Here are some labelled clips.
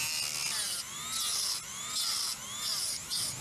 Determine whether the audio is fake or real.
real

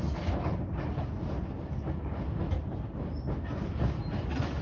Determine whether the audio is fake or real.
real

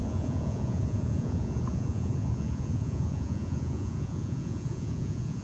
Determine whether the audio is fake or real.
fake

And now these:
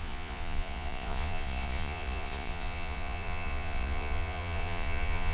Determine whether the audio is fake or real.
fake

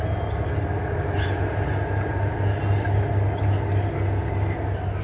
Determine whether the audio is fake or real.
real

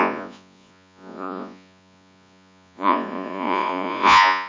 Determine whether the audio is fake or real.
fake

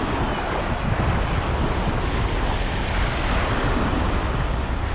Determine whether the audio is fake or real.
real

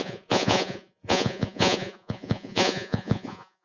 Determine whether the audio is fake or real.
fake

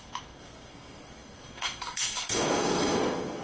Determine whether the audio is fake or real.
fake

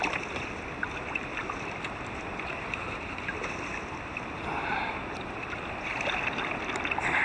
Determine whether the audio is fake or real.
fake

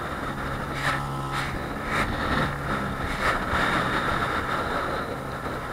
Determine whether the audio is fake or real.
real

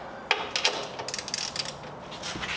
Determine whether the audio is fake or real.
real